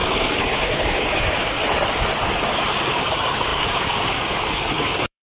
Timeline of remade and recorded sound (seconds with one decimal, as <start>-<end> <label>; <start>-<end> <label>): 0.0-1.6 remade; 1.6-2.5 recorded; 2.5-5.2 remade